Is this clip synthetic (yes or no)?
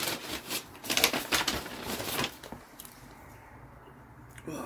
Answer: yes